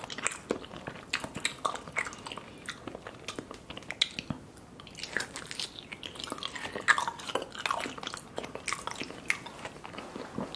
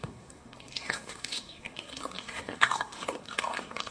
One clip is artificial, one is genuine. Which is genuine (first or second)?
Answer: first